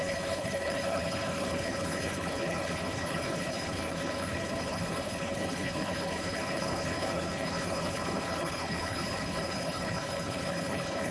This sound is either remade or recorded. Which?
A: remade